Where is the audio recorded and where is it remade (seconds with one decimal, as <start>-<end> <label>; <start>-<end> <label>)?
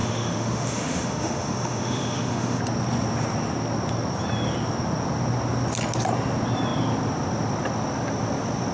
0.0-2.6 remade; 2.6-8.7 recorded